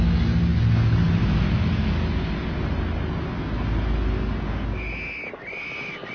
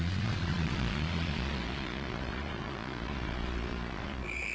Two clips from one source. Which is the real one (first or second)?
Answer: first